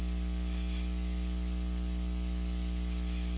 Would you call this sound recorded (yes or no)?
yes